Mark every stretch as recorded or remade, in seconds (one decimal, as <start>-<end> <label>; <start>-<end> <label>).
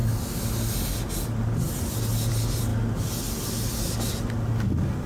0.0-5.1 recorded